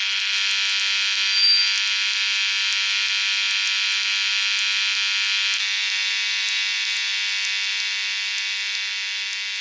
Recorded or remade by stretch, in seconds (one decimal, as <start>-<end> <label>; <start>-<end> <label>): 0.0-9.6 recorded